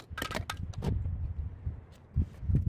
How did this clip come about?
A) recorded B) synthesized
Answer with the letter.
A